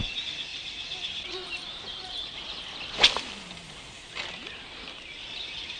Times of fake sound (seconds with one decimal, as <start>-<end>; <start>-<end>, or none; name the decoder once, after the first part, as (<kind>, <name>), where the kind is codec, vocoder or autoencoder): 0.5-2.6 (vocoder, BigVGAN v2)